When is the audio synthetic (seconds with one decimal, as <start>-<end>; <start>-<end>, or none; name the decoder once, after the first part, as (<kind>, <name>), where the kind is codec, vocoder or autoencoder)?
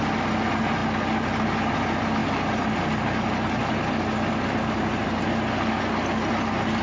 none